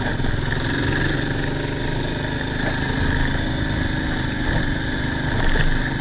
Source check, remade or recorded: recorded